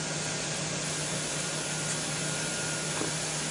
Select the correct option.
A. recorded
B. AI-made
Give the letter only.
A